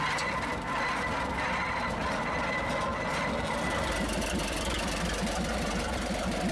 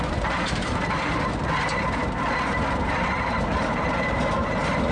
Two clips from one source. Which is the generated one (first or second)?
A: second